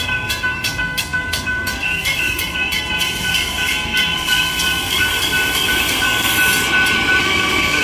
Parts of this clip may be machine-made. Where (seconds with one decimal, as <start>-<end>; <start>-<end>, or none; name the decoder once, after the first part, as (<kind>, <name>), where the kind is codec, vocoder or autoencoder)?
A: 0.0-6.3 (codec, SNAC); 7.2-7.8